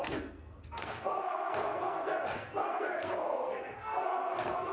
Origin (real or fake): fake